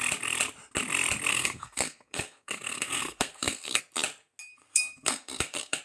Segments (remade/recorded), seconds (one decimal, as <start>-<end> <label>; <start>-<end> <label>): 0.0-1.3 recorded; 1.3-3.8 remade; 3.8-4.5 recorded; 4.5-5.8 remade